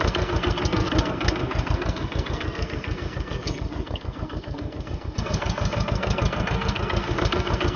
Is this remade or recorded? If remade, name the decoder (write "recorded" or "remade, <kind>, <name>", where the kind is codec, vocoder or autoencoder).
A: remade, codec, SNAC